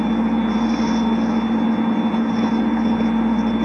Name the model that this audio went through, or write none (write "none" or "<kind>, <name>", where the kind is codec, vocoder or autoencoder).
none